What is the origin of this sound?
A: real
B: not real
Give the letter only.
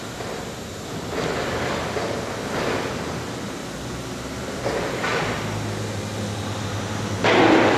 A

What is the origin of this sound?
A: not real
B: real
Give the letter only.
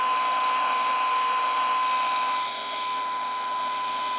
A